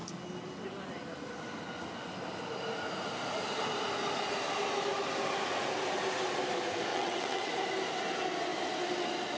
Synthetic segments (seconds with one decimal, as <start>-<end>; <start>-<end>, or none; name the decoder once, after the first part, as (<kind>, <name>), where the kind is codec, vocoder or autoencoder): 6.9-7.5 (vocoder, WaveNeXt)